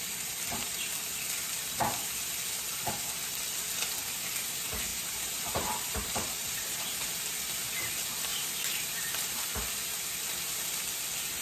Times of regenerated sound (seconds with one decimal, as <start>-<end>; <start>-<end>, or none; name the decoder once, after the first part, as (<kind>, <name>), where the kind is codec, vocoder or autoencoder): 4.9-7.0 (vocoder, BigVGAN v2); 8.3-9.4